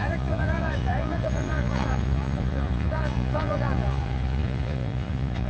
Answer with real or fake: fake